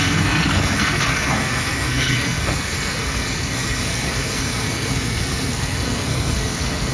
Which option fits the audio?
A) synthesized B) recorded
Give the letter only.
A